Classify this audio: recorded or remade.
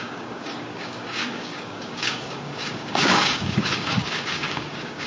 remade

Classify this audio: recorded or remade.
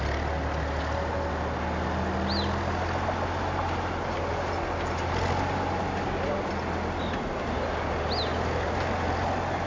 recorded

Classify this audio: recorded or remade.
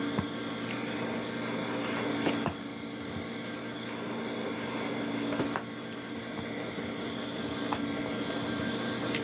recorded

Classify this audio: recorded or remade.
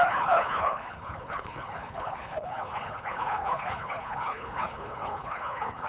remade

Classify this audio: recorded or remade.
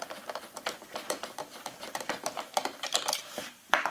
remade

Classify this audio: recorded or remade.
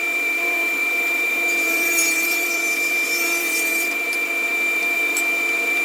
remade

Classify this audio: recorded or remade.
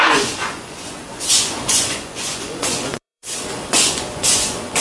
remade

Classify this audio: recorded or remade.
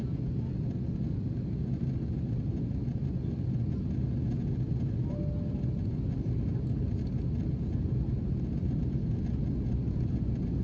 recorded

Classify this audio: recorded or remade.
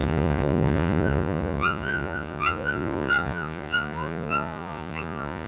remade